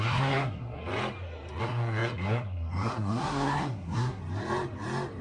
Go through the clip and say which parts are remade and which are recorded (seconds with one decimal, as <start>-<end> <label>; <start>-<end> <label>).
0.0-0.9 remade; 0.9-1.6 recorded; 1.6-4.2 remade; 4.2-5.2 recorded